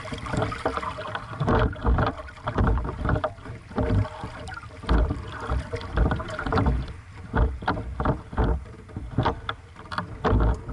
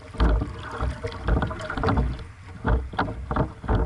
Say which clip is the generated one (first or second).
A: first